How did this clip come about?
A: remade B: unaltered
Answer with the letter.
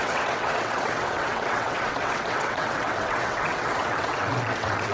A